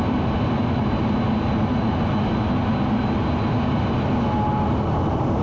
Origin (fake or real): real